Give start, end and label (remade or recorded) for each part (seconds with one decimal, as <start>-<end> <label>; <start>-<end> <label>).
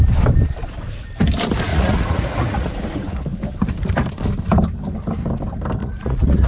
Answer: 0.0-1.7 recorded; 1.7-2.8 remade; 2.8-5.8 recorded; 5.8-6.5 remade